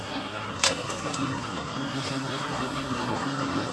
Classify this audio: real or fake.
fake